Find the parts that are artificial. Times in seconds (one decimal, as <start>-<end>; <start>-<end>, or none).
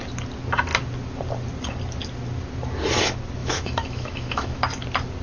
3.4-4.6